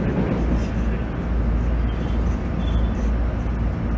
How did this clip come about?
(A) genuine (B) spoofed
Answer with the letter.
A